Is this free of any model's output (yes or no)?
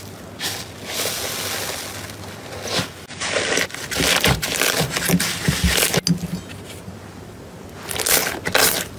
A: yes